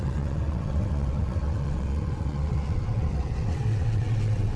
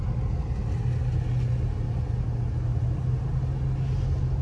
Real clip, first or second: second